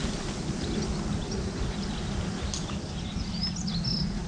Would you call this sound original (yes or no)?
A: yes